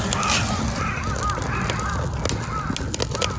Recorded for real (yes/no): yes